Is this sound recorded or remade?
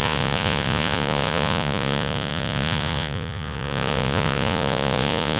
remade